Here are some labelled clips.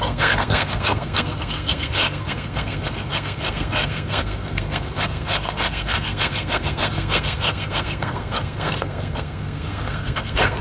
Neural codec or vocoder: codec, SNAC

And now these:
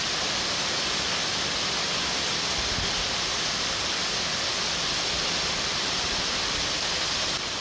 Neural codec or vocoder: none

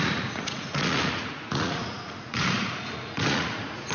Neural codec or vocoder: vocoder, Vocos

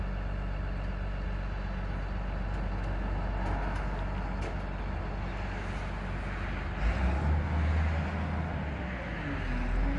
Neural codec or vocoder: none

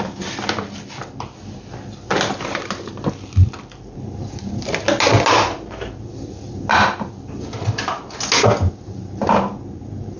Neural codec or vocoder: none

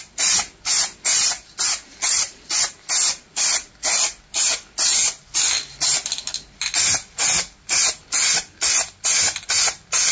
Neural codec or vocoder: none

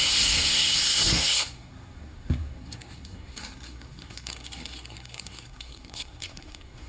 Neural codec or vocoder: codec, SNAC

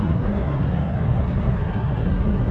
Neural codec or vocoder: codec, SNAC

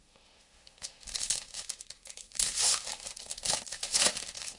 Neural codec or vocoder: autoencoder, DAC-VAE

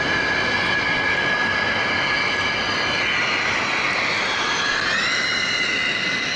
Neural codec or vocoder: none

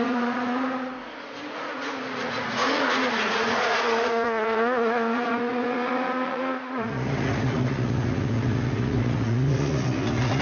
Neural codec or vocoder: vocoder, Vocos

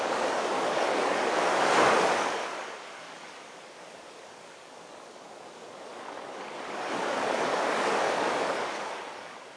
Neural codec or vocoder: codec, DAC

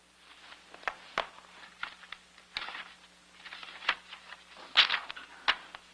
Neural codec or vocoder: none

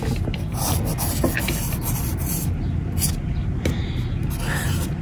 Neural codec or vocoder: none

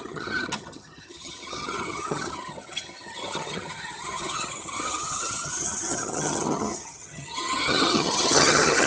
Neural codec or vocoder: vocoder, HiFi-GAN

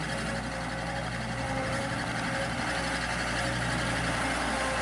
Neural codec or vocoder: none